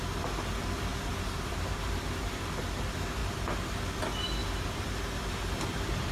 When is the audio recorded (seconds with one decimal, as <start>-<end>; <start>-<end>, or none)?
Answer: 0.0-0.9; 2.2-4.4; 5.1-6.1